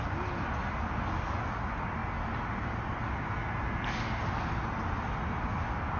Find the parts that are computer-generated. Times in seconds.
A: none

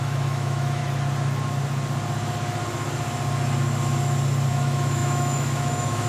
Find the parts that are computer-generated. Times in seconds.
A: 0.0-0.8 (autoencoder, DAC-VAE); 4.5-6.1

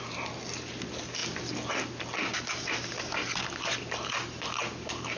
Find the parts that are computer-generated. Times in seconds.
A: none

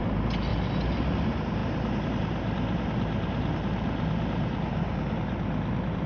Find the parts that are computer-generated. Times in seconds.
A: none